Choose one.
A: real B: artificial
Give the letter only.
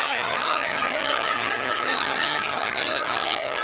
B